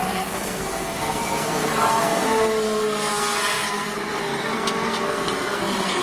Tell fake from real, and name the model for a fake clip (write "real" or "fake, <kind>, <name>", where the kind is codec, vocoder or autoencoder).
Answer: fake, codec, SNAC